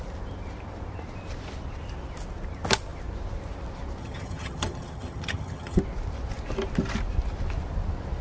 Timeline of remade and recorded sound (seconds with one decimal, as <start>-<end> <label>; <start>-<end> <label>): 0.0-4.0 recorded; 4.0-5.8 remade; 5.8-8.2 recorded